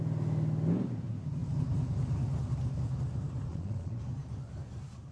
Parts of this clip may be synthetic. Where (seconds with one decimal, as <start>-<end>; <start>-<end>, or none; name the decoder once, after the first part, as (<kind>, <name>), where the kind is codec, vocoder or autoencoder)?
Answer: 3.5-4.0 (vocoder, Vocos)